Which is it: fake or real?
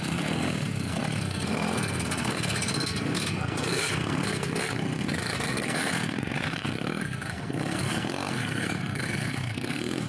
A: fake